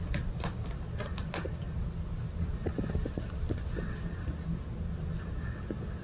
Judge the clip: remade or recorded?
recorded